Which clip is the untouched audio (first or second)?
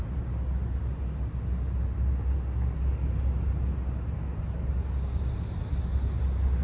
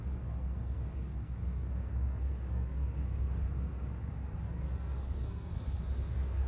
first